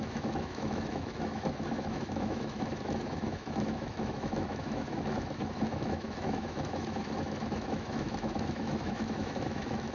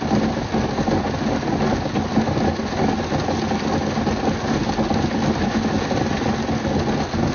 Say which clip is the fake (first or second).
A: first